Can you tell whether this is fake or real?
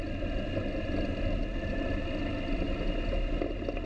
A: real